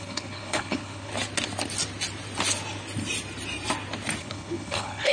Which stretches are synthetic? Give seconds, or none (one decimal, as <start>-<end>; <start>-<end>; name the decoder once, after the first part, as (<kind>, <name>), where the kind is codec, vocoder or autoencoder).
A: 0.0-1.1 (codec, HILCodec); 4.2-5.1